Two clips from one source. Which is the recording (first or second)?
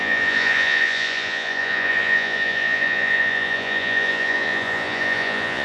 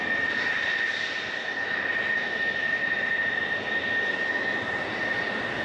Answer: second